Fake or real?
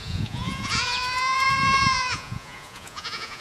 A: fake